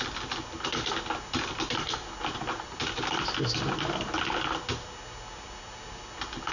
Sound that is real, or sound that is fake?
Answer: real